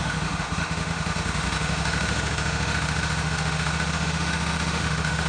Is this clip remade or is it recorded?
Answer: remade